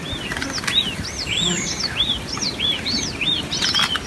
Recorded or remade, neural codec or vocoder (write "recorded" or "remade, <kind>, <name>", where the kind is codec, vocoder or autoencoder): recorded